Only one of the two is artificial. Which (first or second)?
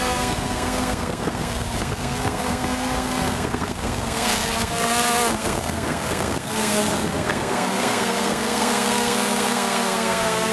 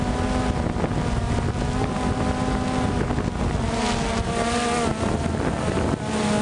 first